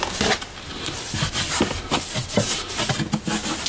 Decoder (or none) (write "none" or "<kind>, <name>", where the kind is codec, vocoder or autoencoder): none